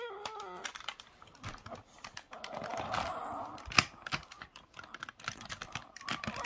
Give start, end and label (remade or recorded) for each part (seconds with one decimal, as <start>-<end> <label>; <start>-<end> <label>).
0.0-6.5 recorded